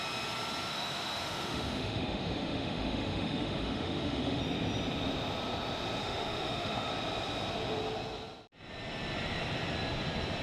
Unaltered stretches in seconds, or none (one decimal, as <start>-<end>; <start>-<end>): 0.0-0.7; 4.4-6.0; 6.9-10.4